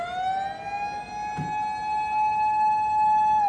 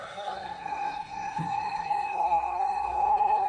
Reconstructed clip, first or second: second